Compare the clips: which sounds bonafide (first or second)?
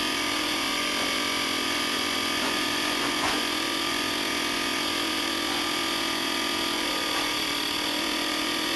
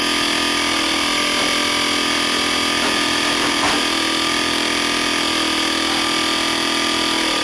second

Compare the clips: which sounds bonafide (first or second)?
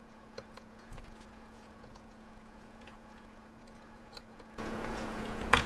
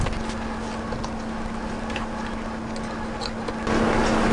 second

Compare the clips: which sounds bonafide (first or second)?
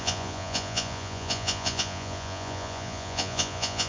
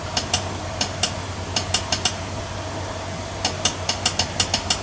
second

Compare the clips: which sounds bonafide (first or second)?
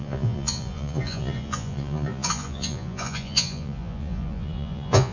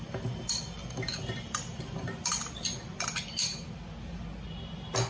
second